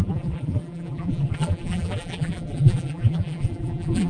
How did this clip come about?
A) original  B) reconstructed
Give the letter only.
B